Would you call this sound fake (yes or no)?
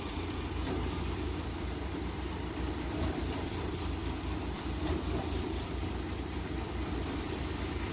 yes